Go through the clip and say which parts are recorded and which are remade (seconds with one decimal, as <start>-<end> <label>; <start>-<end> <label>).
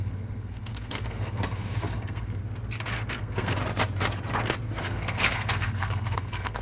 0.0-2.4 remade; 2.4-3.2 recorded; 3.2-3.6 remade; 3.6-4.8 recorded; 4.8-6.6 remade